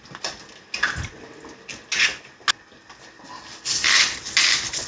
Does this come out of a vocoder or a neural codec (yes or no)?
no